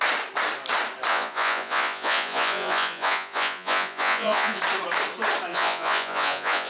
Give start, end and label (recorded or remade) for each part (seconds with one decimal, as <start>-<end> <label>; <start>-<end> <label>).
0.0-1.1 recorded; 1.1-4.6 remade; 4.6-5.5 recorded; 5.5-6.7 remade